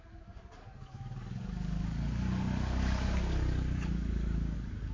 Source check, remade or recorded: remade